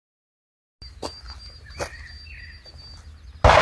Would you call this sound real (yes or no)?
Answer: yes